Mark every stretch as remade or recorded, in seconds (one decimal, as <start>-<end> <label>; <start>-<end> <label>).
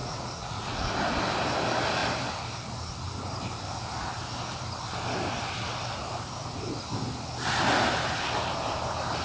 0.0-0.9 remade; 0.9-9.2 recorded